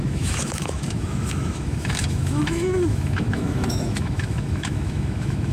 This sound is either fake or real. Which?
fake